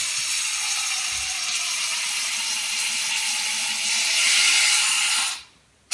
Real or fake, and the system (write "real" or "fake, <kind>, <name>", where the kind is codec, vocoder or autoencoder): real